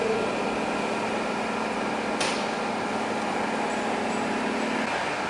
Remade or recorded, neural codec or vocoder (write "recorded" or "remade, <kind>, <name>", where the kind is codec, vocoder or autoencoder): recorded